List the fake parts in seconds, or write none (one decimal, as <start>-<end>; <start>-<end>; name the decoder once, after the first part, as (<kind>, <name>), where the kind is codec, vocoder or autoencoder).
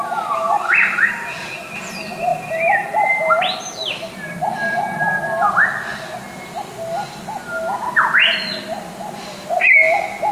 none